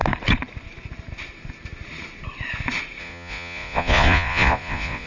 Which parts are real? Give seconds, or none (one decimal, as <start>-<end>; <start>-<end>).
0.0-3.0